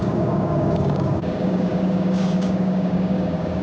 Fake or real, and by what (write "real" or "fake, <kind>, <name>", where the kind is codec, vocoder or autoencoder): fake, codec, DAC